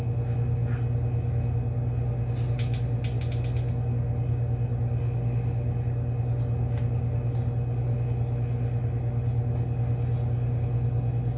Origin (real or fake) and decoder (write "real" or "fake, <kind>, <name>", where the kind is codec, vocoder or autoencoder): real